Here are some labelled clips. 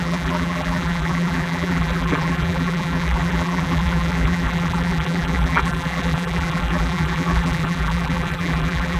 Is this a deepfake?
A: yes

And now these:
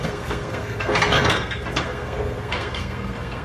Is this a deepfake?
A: yes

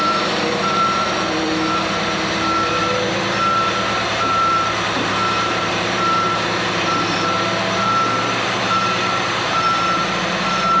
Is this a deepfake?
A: yes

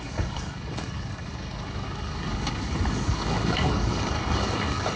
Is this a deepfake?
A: yes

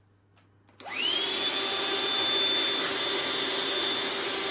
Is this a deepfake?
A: no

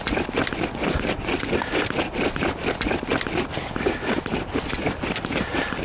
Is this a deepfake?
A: no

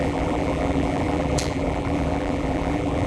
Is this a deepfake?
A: yes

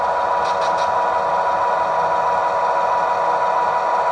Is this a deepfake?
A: no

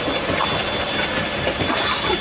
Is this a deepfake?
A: no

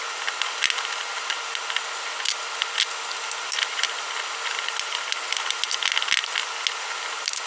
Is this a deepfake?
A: no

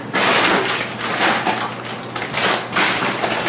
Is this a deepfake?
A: no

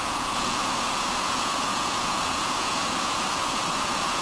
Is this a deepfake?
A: yes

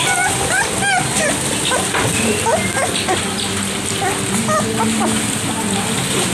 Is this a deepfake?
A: no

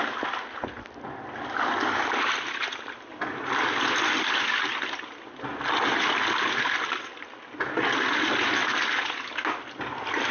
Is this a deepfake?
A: no